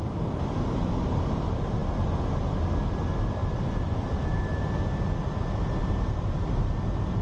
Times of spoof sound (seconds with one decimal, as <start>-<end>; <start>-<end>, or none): 3.4-4.6; 5.8-6.3